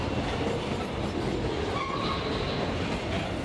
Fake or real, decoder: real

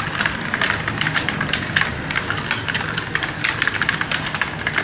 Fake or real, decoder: real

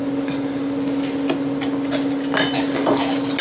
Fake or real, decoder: real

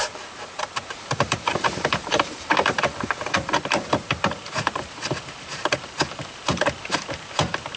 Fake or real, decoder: fake, vocoder, BigVGAN v2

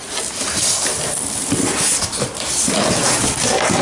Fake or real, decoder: real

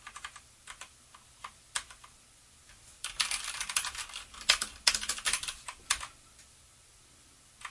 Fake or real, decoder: real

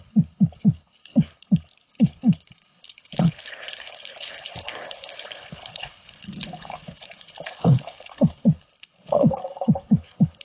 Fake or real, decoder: fake, codec, HILCodec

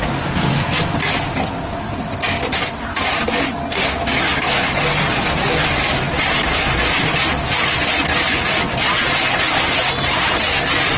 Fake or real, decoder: real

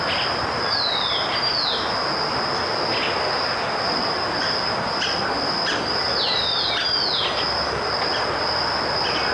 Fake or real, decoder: real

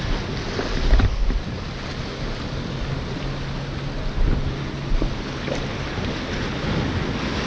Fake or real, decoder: real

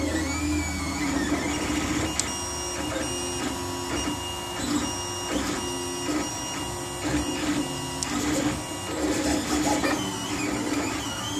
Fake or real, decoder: real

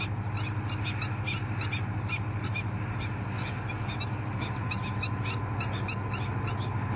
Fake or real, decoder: real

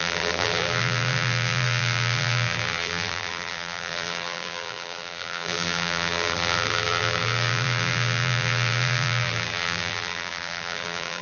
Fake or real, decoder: fake, vocoder, BigVGAN v2